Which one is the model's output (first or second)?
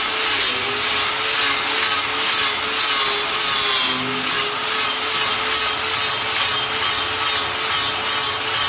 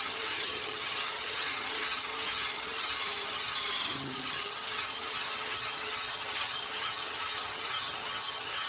second